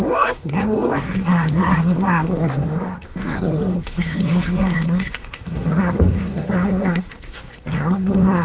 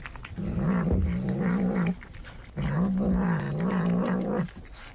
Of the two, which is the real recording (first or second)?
second